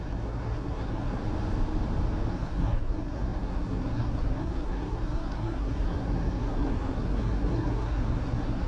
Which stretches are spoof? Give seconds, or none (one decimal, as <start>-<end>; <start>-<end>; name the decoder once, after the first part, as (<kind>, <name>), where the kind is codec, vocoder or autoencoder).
0.0-1.2 (codec, SNAC); 2.3-8.7